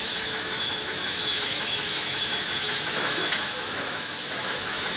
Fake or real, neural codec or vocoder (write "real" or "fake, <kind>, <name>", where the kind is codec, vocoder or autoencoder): fake, autoencoder, DAC-VAE